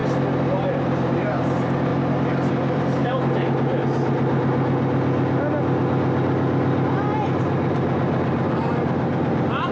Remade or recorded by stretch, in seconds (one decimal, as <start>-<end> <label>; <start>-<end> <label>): 0.0-0.7 recorded; 0.7-1.9 remade; 1.9-2.5 recorded; 2.5-3.0 remade; 3.0-7.4 recorded; 7.4-9.7 remade